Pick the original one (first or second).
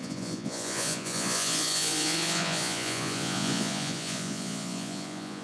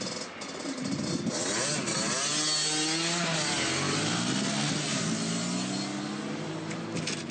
second